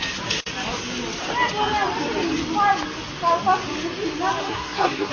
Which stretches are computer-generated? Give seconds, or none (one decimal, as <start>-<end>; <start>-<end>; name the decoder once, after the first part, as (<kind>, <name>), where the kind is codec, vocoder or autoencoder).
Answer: 4.4-5.1 (codec, SNAC)